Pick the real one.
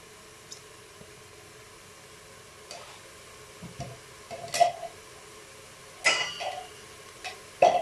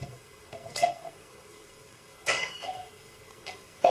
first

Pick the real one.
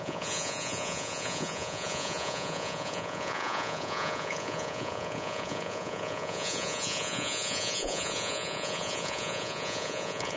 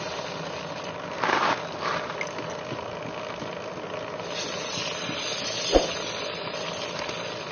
second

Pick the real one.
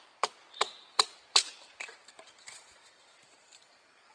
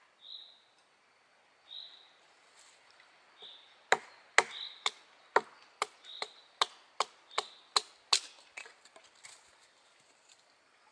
second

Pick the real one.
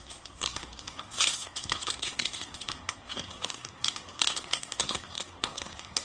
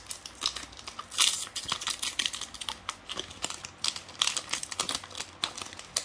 second